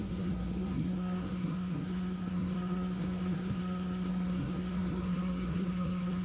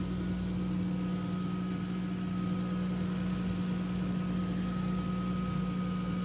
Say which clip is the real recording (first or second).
second